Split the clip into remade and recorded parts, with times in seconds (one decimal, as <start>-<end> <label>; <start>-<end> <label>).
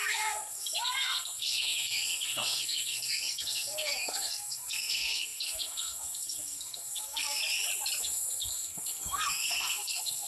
0.0-7.4 remade; 7.4-8.0 recorded; 8.0-10.3 remade